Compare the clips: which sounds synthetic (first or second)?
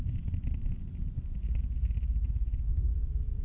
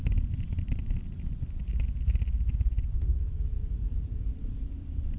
second